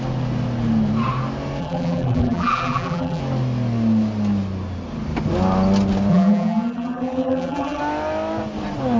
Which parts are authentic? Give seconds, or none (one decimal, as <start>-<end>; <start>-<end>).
0.0-1.6; 3.2-6.1; 7.8-9.0